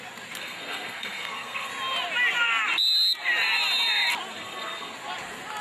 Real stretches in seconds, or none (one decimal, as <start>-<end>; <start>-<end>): 0.0-0.4; 1.7-4.3; 4.9-5.6